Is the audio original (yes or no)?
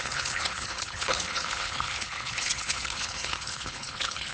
no